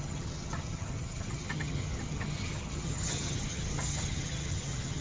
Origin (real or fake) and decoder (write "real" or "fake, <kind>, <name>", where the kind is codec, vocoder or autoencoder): fake, vocoder, HiFi-GAN